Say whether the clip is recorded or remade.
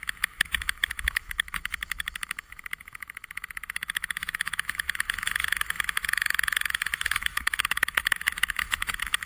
remade